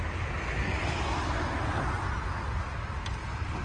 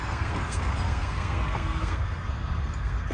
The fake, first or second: second